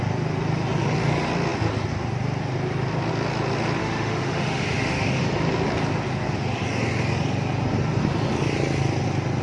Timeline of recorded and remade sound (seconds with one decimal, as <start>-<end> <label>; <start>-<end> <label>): 0.0-3.8 recorded; 3.8-5.2 remade; 5.2-9.4 recorded